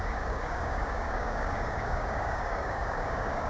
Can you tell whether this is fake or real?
fake